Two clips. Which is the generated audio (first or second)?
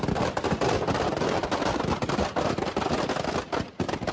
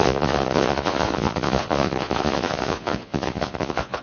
second